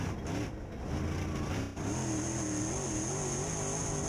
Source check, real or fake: real